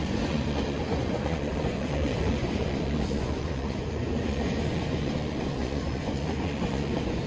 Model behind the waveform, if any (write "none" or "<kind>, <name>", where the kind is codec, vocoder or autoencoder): vocoder, Vocos